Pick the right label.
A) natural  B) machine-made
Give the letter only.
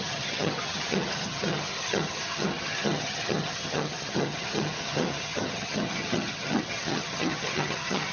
B